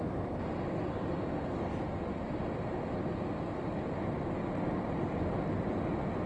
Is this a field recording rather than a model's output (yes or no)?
yes